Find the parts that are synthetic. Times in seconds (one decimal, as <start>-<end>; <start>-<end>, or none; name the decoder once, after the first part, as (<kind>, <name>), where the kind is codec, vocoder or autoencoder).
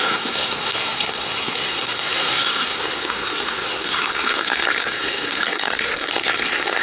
0.0-6.8 (codec, SNAC)